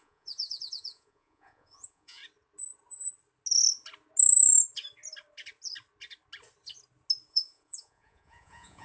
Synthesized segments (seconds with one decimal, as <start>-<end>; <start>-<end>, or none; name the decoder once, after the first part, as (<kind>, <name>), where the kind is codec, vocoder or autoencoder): 0.0-2.2 (vocoder, Vocos); 7.3-8.8